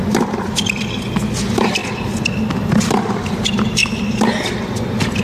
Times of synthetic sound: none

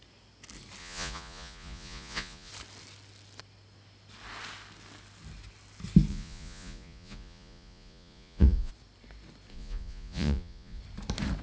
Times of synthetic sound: 0.8-2.5 (vocoder, Vocos); 6.1-8.7; 9.5-10.8

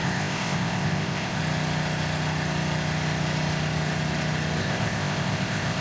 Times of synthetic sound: 0.0-1.4 (codec, ZipCodec); 4.6-5.8

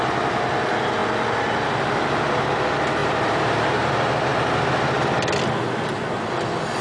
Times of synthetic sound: 3.0-5.0 (vocoder, BigVGAN v2)

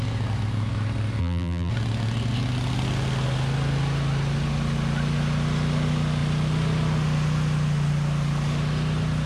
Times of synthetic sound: 1.2-1.7 (vocoder, BigVGAN v2)

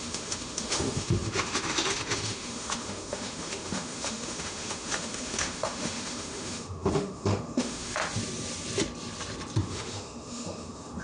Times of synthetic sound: 0.0-8.0 (autoencoder, DAC-VAE); 9.6-11.0